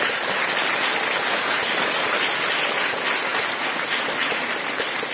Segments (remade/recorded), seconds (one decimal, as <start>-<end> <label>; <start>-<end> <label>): 0.0-5.1 recorded